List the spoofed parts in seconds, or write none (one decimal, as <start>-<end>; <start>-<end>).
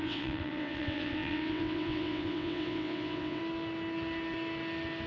0.0-3.4